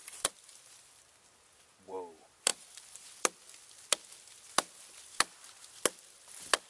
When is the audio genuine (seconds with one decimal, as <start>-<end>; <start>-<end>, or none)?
0.0-6.7